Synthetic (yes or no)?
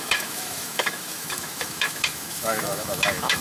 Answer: yes